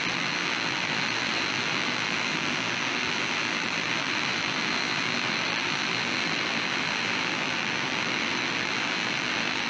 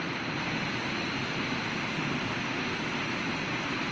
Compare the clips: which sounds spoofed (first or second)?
first